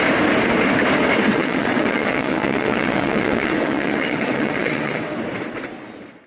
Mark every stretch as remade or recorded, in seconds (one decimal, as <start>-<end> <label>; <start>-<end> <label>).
0.0-1.3 recorded; 1.3-5.1 remade; 5.1-6.3 recorded